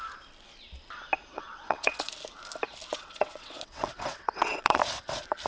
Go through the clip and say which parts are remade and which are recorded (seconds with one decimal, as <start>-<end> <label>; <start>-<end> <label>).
0.0-1.3 recorded; 1.3-2.1 remade; 2.1-2.9 recorded; 2.9-4.8 remade; 4.8-5.5 recorded

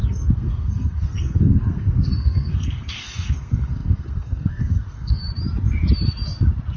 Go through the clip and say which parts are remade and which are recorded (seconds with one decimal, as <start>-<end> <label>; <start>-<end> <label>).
0.0-5.2 remade; 5.2-6.8 recorded